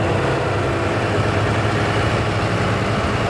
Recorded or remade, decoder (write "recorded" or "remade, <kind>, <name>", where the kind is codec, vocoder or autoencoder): recorded